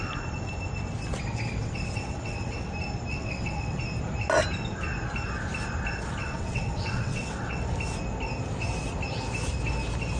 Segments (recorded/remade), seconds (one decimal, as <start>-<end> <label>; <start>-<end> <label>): 0.0-1.6 recorded; 1.6-2.7 remade; 2.7-3.1 recorded; 3.1-3.8 remade; 3.8-6.2 recorded; 6.2-7.6 remade; 7.6-10.2 recorded